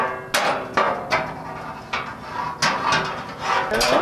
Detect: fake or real real